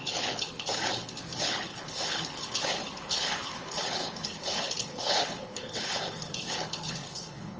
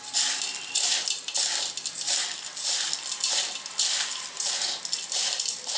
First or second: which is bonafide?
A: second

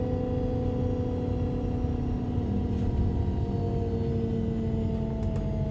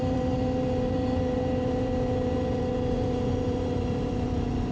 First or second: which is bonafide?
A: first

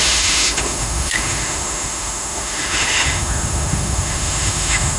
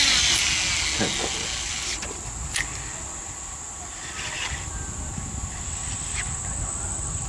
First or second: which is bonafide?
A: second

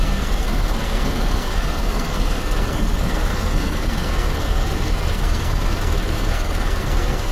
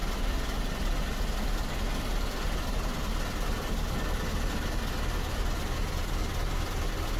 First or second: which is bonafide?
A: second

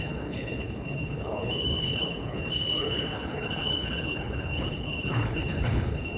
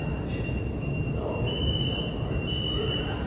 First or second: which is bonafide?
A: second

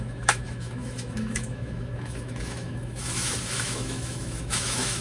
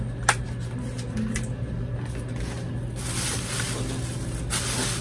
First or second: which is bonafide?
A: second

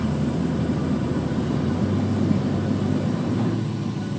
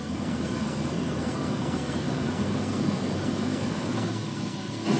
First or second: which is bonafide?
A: first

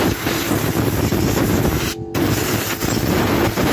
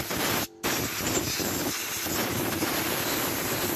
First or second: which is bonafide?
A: first